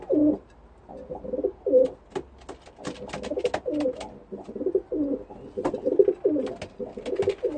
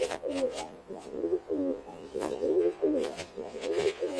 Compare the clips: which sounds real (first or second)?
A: first